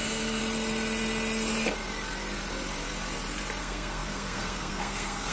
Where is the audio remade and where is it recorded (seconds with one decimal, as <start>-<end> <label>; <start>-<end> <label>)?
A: 0.0-0.4 remade; 0.4-3.6 recorded; 3.6-5.3 remade